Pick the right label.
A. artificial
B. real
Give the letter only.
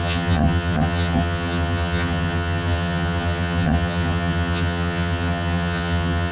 A